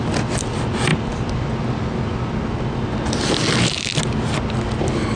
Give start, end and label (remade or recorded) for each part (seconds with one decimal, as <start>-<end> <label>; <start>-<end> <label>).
0.0-5.2 recorded